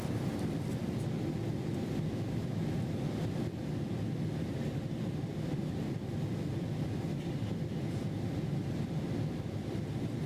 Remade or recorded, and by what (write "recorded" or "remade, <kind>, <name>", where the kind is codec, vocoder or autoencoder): recorded